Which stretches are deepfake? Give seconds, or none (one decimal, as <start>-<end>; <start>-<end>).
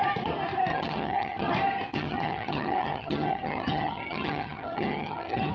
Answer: 0.7-1.5; 1.9-5.5